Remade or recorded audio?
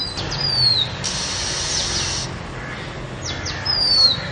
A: recorded